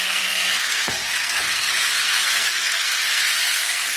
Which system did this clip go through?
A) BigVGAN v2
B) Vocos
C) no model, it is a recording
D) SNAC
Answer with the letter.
D